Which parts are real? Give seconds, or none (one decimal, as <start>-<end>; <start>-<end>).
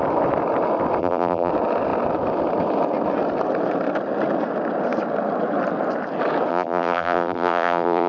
0.0-1.0; 1.5-6.5